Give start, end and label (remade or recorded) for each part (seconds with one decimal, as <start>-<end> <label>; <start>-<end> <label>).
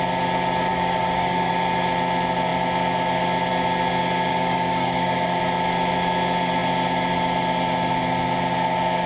0.0-0.7 recorded; 0.7-1.5 remade; 1.5-4.3 recorded; 4.3-5.4 remade; 5.4-9.1 recorded